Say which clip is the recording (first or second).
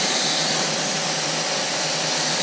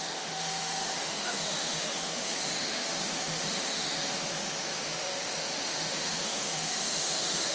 first